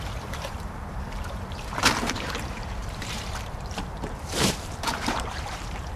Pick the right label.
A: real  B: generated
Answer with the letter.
B